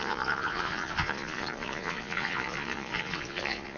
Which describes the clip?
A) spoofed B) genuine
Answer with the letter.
A